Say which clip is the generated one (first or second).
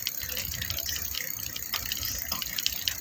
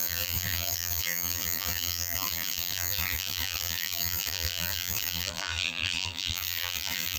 second